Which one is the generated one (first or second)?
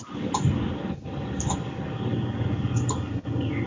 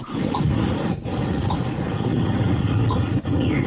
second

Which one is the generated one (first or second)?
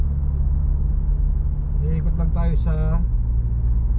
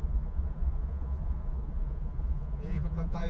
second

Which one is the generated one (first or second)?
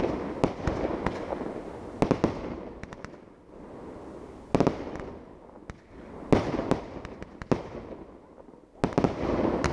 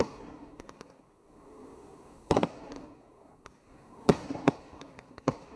second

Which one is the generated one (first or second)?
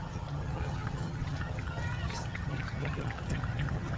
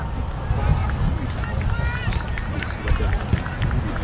first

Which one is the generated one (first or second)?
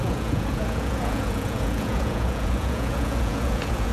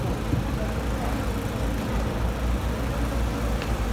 first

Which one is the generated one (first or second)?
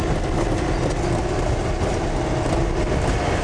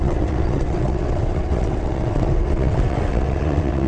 second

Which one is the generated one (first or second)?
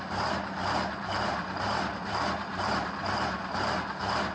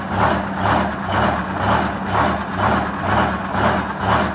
first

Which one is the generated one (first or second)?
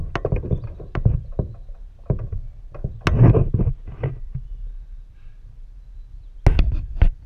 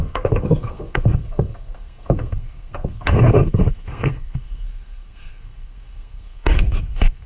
second